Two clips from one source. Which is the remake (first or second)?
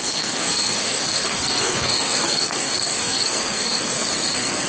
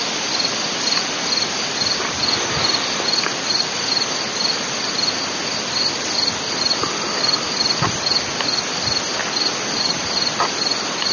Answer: first